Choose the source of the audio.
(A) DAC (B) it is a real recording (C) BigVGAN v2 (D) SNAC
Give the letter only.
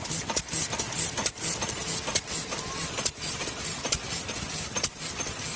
B